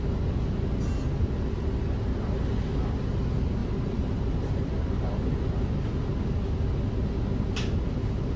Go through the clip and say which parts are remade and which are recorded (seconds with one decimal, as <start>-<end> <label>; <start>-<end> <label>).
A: 0.0-3.6 recorded; 3.6-4.7 remade; 4.7-8.4 recorded